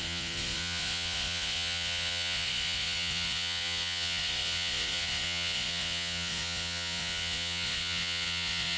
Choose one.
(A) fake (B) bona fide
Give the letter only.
A